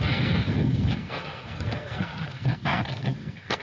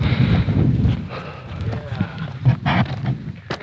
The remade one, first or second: first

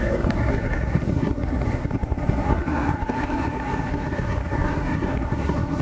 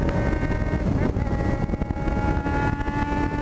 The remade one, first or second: first